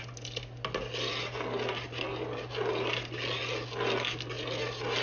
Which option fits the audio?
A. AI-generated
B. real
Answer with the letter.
B